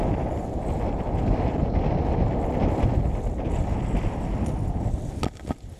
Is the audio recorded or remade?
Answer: recorded